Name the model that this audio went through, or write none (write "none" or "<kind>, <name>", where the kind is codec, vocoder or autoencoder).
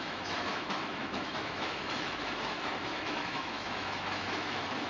autoencoder, DAC-VAE